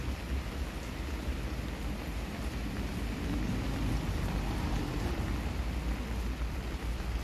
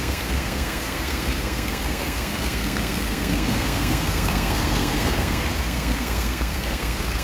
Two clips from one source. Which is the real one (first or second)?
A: first